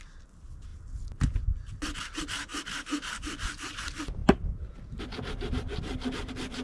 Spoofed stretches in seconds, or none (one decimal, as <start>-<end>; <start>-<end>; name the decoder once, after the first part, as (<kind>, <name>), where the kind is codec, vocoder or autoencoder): 2.5-3.8 (vocoder, BigVGAN v2)